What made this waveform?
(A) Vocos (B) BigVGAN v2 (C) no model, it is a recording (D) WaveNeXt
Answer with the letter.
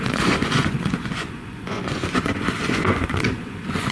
A